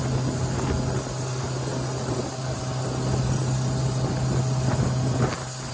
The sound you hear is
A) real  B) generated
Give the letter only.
A